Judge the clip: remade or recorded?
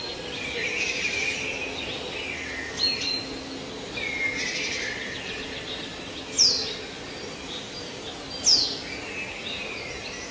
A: recorded